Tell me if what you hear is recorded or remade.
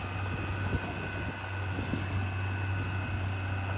recorded